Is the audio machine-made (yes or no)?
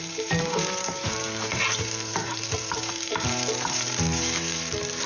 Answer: yes